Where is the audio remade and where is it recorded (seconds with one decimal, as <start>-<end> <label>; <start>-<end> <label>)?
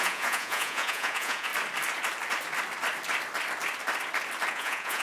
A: 0.0-1.5 remade; 1.5-4.5 recorded; 4.5-5.0 remade